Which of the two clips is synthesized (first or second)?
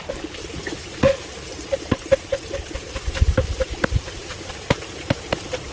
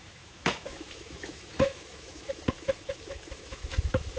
second